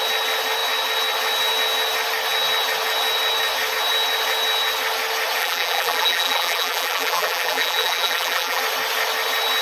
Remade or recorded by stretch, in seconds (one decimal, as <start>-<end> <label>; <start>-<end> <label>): 0.0-5.4 recorded; 5.4-8.6 remade; 8.6-9.6 recorded